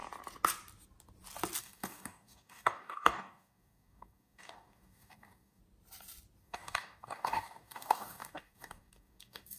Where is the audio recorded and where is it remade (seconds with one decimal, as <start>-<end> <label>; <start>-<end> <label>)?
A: 0.0-1.6 recorded; 1.6-5.6 remade; 5.6-6.4 recorded; 6.4-9.6 remade